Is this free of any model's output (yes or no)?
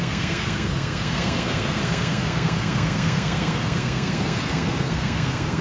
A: no